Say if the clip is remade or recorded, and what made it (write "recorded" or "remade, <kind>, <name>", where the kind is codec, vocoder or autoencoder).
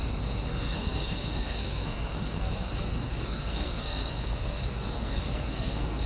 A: remade, codec, SNAC